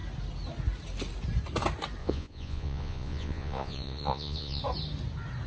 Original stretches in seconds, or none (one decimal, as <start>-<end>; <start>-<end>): 0.0-2.0; 4.6-5.5